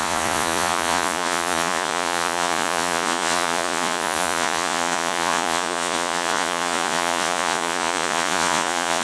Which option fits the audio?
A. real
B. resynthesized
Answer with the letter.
B